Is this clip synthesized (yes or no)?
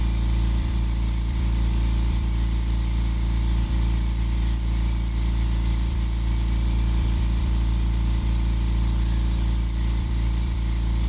yes